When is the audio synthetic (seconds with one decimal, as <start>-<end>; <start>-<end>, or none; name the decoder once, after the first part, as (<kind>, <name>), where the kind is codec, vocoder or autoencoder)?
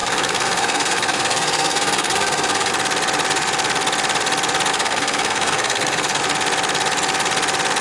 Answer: 0.0-2.7 (codec, SNAC); 4.7-6.2